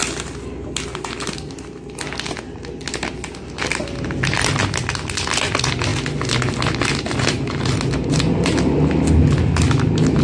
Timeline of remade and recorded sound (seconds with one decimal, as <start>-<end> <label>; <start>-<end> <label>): 0.0-10.2 recorded